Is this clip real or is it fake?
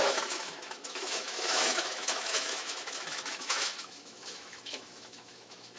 fake